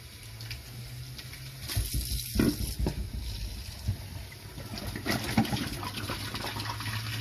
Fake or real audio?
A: real